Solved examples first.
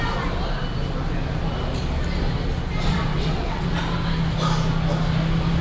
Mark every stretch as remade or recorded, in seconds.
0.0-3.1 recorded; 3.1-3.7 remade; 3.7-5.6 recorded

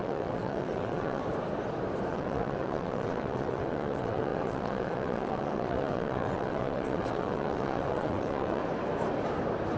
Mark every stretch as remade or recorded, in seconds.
0.0-1.2 remade; 1.2-2.1 recorded; 2.1-8.6 remade; 8.6-9.8 recorded

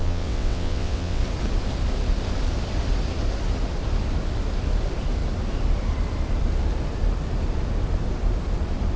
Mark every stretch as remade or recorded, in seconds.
0.0-1.2 remade; 1.2-9.0 recorded

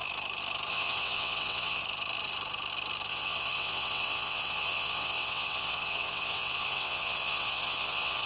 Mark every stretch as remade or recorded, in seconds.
0.0-0.7 recorded; 0.7-1.8 remade; 1.8-3.1 recorded; 3.1-8.3 remade

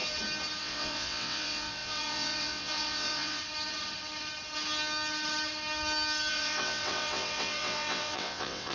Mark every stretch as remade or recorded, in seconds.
0.0-0.6 recorded; 0.6-3.4 remade; 3.4-6.3 recorded; 6.3-8.7 remade